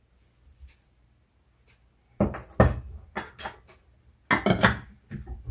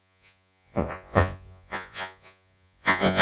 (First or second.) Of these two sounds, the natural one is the first